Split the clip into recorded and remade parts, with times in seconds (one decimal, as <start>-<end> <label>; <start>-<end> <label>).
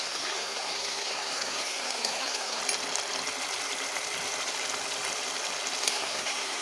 0.0-2.6 remade; 2.6-5.8 recorded; 5.8-6.6 remade